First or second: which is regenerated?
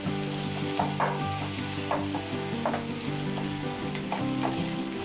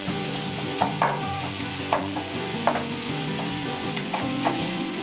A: second